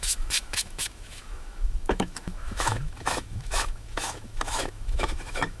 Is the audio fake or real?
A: fake